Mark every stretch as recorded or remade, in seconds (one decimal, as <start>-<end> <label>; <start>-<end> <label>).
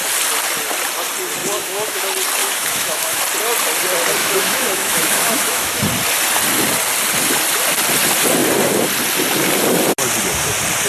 0.0-1.4 recorded; 1.4-2.0 remade; 2.0-2.4 recorded; 2.4-3.2 remade; 3.2-4.2 recorded; 4.2-5.8 remade; 5.8-10.9 recorded